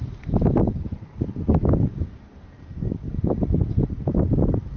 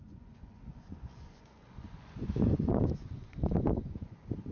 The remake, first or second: second